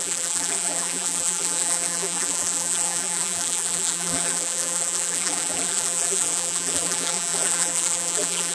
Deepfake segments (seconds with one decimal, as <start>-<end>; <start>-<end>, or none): 0.0-8.5